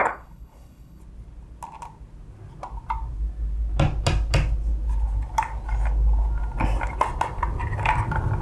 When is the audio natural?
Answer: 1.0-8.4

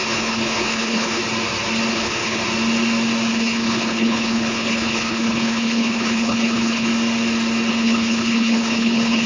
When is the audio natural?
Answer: 1.2-1.9; 2.4-3.3; 6.9-7.7

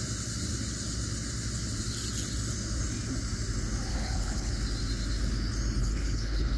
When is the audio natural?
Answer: 0.0-3.9; 4.5-5.8

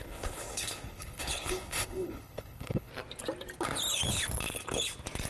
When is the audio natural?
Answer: 2.9-5.3